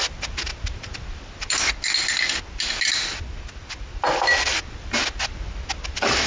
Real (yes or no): yes